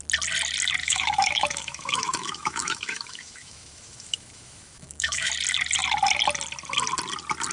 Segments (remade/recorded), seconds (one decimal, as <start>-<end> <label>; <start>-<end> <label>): 0.0-0.8 recorded; 0.8-5.3 remade; 5.3-7.5 recorded